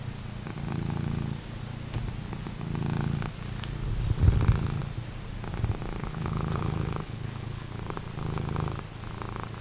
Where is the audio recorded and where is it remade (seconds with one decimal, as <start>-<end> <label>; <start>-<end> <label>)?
0.0-6.0 recorded; 6.0-6.6 remade; 6.6-7.0 recorded; 7.0-7.7 remade; 7.7-9.6 recorded